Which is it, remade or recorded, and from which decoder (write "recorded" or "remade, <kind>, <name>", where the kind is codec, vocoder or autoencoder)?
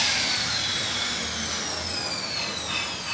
recorded